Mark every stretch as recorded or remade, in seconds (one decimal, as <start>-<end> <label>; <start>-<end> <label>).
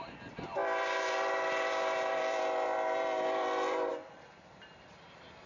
0.0-5.5 remade